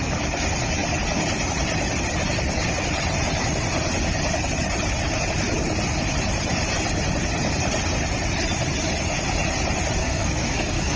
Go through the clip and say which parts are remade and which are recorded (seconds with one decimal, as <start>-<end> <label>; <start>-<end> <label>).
0.0-10.0 recorded; 10.0-11.0 remade